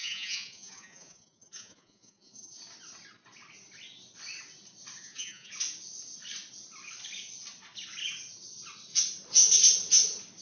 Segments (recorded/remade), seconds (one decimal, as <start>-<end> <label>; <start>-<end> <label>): 0.0-2.6 remade; 2.6-5.0 recorded; 5.0-5.5 remade; 5.5-10.4 recorded